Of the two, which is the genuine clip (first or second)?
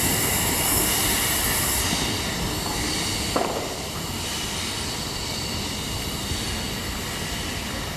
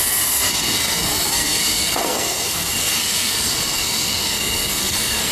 first